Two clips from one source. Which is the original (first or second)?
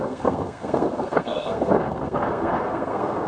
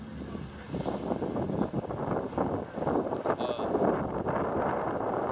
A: second